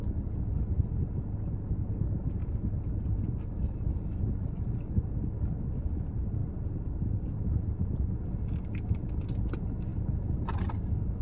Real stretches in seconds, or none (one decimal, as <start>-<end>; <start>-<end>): 0.0-11.2